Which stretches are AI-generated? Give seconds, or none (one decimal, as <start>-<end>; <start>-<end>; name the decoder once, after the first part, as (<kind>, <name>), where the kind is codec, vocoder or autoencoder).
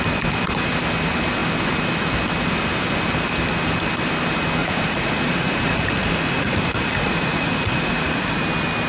4.6-8.4 (vocoder, Vocos)